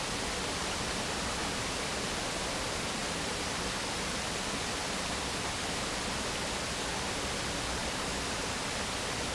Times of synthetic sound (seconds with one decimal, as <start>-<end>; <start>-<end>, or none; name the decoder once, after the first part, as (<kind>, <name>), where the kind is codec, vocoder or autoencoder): none